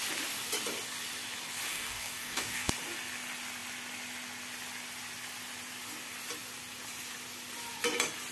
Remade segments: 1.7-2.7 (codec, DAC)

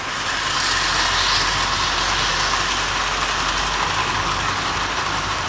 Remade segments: 4.0-4.7 (codec, DAC)

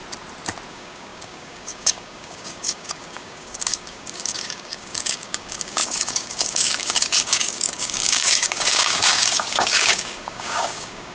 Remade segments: 0.7-11.1 (codec, DAC)